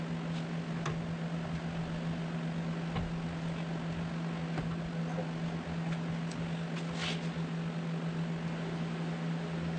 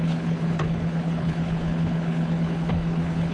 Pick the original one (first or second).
first